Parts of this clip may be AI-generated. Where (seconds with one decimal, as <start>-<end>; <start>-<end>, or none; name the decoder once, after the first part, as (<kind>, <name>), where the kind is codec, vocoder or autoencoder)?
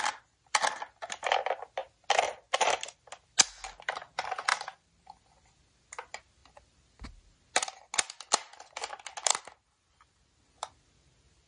none